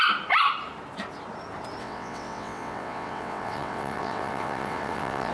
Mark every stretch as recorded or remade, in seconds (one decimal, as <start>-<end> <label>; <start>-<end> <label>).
0.0-1.8 recorded; 1.8-5.3 remade